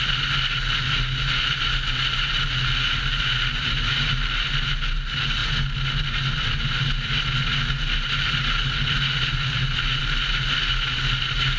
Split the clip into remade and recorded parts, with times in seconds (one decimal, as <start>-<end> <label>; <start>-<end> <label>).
0.0-11.6 recorded